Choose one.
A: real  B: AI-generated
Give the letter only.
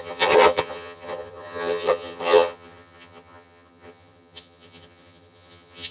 B